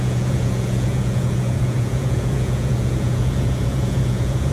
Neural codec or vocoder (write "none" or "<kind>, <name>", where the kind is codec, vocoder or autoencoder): vocoder, Vocos